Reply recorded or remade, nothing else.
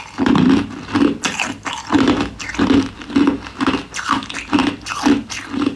recorded